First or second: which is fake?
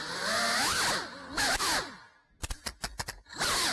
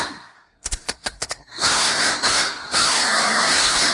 second